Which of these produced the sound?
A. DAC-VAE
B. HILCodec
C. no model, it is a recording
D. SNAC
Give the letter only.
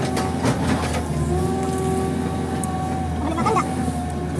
C